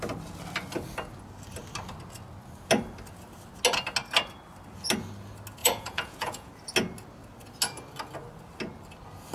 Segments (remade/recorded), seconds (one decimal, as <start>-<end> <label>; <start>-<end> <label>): 0.0-5.6 recorded; 5.6-6.5 remade; 6.5-9.3 recorded